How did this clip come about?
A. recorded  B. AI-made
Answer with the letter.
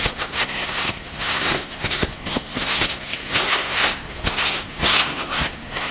B